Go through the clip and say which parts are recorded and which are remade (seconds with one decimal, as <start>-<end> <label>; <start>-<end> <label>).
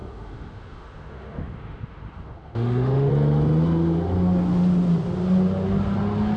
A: 0.0-3.1 remade; 3.1-6.4 recorded